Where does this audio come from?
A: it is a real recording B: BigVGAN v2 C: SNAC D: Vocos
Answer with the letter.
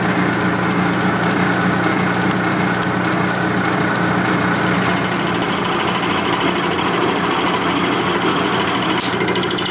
A